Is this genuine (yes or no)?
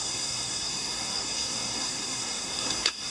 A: no